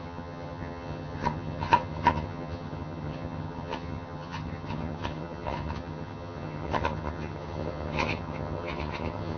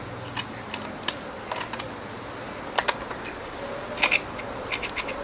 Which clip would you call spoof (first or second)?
first